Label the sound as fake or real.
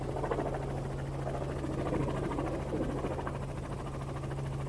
real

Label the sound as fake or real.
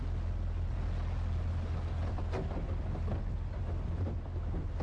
real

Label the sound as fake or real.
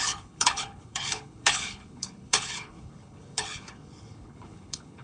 fake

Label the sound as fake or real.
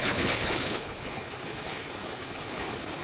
fake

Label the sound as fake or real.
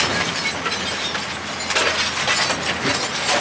real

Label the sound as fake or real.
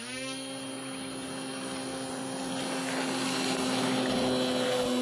real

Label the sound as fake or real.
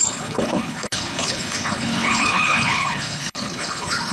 fake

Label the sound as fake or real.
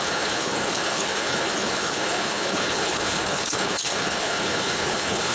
fake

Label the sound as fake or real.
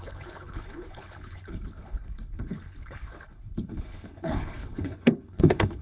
fake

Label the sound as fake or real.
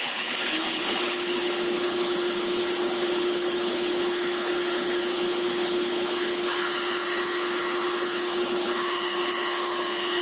fake